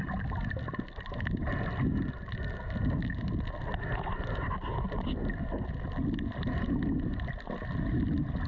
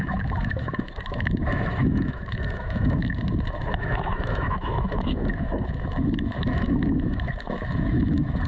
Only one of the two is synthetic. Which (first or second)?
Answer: second